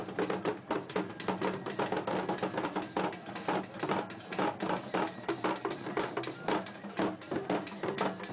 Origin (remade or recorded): recorded